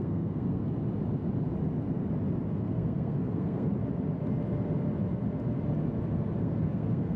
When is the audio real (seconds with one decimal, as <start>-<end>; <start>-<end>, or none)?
0.6-2.5; 3.8-6.4